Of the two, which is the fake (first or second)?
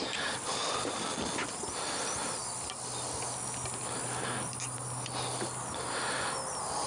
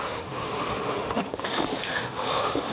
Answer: second